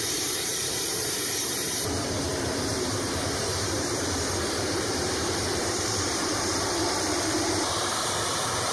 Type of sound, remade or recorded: remade